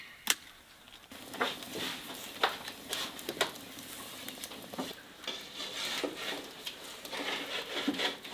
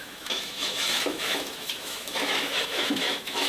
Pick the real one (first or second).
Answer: first